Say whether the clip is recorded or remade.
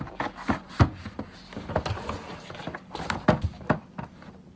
recorded